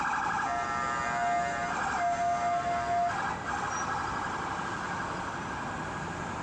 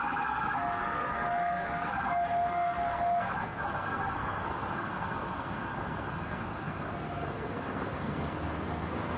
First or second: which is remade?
second